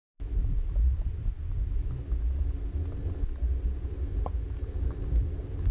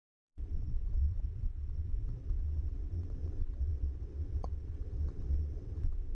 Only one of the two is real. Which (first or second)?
first